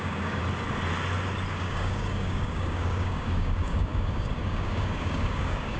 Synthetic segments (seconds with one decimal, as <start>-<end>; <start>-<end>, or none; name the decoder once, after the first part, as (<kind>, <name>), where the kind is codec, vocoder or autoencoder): 0.0-0.4 (codec, DAC); 1.5-5.8